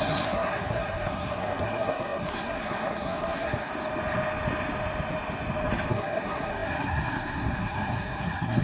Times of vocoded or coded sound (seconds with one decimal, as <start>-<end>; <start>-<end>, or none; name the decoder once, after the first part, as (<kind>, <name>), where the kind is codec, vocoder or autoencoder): 0.0-3.7 (codec, SNAC); 5.9-8.6